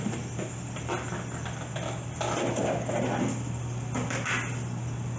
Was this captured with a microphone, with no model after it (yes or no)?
yes